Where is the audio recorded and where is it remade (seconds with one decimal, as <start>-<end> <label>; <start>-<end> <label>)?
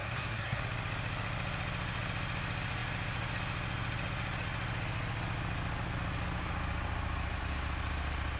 0.0-0.6 remade; 0.6-8.4 recorded